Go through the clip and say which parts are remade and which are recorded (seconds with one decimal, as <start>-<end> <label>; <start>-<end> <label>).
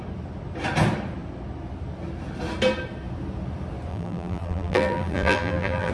0.0-3.9 recorded; 3.9-5.9 remade